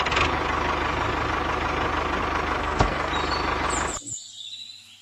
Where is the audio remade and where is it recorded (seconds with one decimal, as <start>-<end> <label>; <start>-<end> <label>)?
0.0-2.6 recorded; 2.6-3.1 remade; 3.1-5.0 recorded